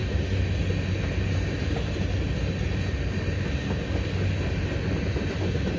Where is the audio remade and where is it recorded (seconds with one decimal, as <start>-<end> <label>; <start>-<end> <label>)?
0.0-5.8 recorded